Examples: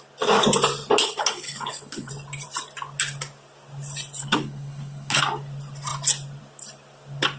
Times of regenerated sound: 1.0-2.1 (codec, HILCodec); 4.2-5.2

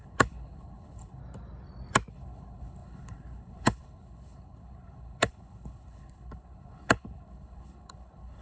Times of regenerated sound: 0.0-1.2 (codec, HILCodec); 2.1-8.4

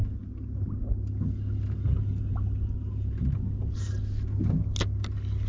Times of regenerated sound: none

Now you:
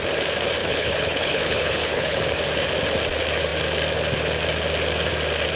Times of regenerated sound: 0.6-2.2 (codec, HILCodec)

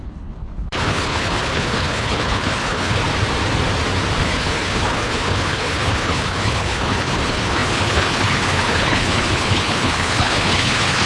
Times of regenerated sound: 0.0-3.0 (codec, HILCodec); 4.2-11.1

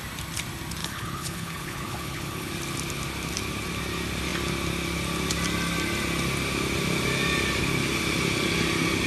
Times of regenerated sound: 0.8-2.5 (codec, HILCodec)